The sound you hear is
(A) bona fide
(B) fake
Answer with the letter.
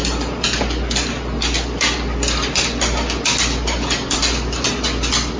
A